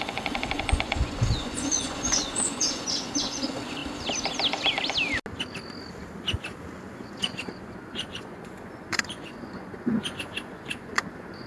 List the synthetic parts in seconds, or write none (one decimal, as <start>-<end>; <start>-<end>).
0.0-3.8; 6.9-11.5